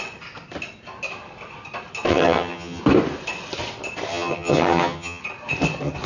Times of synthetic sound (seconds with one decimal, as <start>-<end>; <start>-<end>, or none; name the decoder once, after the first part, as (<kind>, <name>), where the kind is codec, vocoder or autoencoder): 2.1-2.8 (vocoder, HiFi-GAN); 4.1-5.2